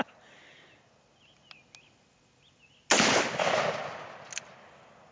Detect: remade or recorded recorded